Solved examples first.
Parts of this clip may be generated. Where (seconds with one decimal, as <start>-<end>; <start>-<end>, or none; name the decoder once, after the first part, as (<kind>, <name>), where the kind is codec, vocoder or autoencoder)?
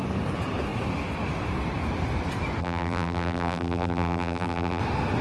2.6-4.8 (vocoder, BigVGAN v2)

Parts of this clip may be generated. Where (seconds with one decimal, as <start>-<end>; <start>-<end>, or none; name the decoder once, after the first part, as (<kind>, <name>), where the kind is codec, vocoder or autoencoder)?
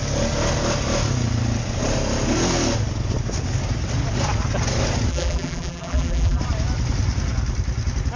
5.1-6.4 (vocoder, BigVGAN v2)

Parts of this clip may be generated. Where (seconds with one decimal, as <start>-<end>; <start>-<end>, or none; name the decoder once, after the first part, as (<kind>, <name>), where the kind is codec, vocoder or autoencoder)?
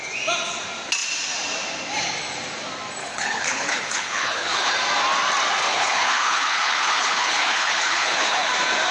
3.0-4.7 (codec, HILCodec); 5.7-8.5